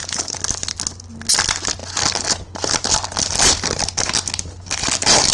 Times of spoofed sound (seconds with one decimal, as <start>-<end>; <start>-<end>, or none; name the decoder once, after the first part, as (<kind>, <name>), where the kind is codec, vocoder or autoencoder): none